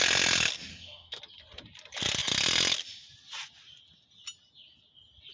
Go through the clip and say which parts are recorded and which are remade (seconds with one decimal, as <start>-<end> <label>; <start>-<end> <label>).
0.0-0.7 recorded; 0.7-1.2 remade; 1.2-5.3 recorded